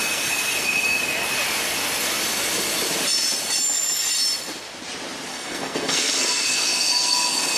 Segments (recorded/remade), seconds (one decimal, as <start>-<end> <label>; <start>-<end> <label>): 0.0-1.0 remade; 1.0-5.3 recorded; 5.3-7.6 remade